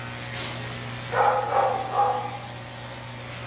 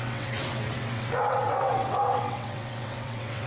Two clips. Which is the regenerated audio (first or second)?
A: second